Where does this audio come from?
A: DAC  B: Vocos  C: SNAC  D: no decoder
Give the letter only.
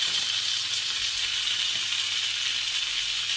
D